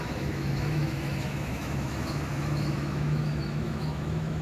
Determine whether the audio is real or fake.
fake